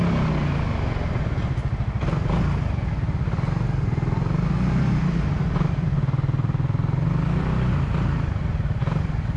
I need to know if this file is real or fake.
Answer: real